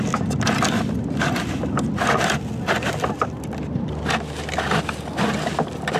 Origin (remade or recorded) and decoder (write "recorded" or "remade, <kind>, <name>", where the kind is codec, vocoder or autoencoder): recorded